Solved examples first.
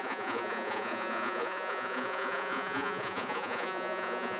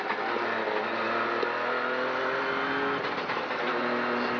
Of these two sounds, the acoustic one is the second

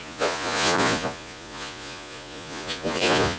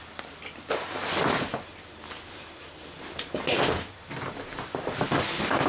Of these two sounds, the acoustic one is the second